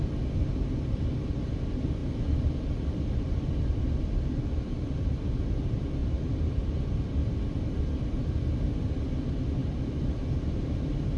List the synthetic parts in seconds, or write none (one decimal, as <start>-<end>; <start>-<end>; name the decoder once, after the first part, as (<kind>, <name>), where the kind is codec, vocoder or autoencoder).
2.0-3.5 (vocoder, BigVGAN v2); 6.0-7.4